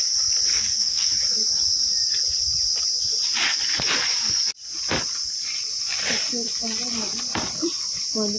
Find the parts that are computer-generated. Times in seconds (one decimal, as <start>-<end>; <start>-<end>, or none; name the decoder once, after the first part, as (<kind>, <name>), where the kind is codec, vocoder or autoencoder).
0.5-1.1 (codec, SNAC)